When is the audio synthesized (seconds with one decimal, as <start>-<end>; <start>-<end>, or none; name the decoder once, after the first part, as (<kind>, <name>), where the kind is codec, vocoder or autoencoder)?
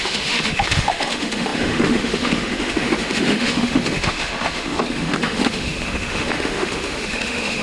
0.0-7.6 (autoencoder, DAC-VAE)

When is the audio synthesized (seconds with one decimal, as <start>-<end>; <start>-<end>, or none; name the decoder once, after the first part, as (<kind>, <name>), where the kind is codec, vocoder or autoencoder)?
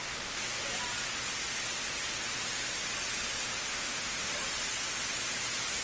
3.7-4.3 (autoencoder, DAC-VAE)